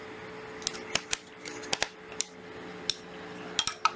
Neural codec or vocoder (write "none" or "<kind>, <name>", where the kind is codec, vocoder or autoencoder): none